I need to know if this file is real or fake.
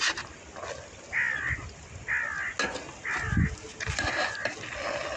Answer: real